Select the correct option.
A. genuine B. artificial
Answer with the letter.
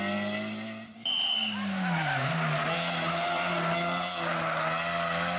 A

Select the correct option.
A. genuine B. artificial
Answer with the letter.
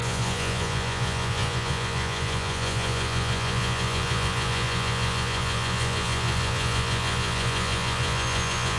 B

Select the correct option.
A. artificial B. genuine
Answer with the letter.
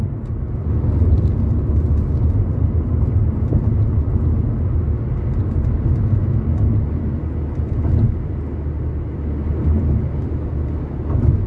B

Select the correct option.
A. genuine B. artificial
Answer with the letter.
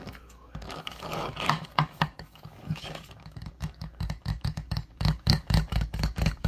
B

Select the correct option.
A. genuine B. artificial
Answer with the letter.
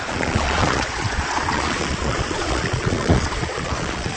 B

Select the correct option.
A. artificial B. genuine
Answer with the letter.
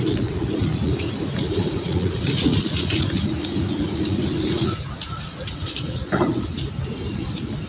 A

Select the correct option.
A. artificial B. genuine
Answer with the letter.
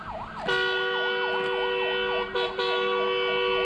B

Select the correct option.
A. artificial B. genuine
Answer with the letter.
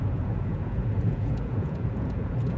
A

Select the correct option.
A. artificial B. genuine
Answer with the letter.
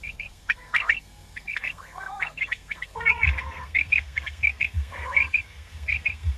A